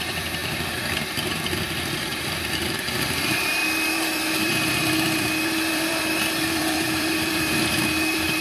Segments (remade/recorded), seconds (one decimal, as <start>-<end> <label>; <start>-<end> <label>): 0.0-0.4 remade; 0.4-1.9 recorded; 1.9-8.4 remade